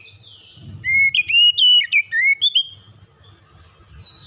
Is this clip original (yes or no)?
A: yes